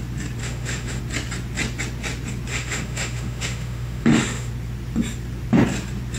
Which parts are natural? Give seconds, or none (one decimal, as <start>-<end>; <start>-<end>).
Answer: 0.0-0.4; 1.0-2.5; 4.5-6.2